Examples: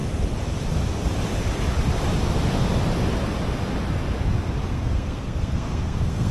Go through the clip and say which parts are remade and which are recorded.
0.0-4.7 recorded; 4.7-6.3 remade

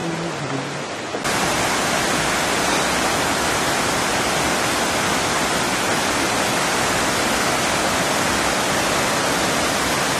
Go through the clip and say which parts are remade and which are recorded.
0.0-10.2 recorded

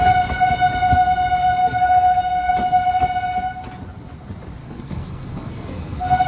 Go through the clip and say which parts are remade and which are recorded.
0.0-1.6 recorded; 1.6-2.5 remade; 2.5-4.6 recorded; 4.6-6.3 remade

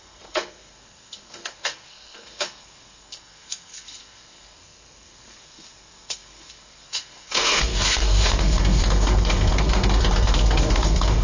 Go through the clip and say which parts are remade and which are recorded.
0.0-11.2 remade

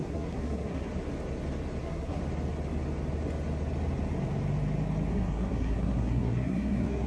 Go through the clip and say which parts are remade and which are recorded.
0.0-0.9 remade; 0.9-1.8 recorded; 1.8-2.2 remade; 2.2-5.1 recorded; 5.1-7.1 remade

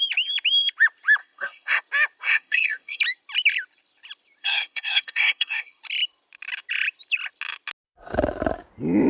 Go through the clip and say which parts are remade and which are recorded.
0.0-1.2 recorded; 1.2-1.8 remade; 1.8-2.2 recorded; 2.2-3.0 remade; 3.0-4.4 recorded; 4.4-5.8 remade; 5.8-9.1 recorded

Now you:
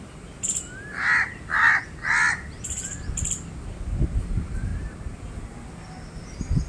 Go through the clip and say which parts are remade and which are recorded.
0.0-6.7 recorded

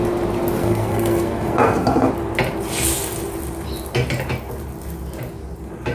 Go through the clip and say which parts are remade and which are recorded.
0.0-0.6 recorded; 0.6-2.1 remade; 2.1-5.9 recorded